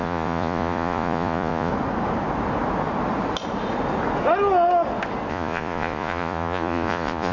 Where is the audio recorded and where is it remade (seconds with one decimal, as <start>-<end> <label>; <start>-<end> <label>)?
0.0-1.7 remade; 1.7-5.3 recorded; 5.3-7.3 remade